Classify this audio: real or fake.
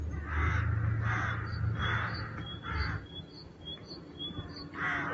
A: real